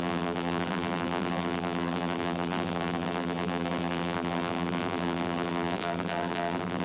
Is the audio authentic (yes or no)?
no